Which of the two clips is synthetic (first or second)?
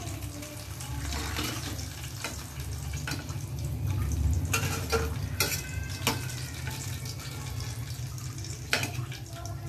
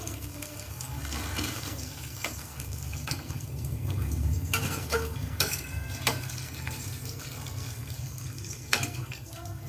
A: second